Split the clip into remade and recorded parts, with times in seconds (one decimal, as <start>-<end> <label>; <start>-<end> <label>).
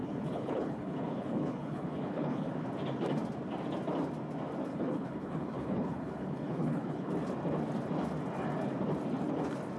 0.0-2.5 remade; 2.5-4.7 recorded; 4.7-7.1 remade; 7.1-9.8 recorded